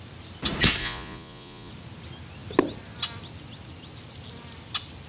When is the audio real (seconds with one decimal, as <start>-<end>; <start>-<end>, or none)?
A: 0.0-0.8; 1.7-5.1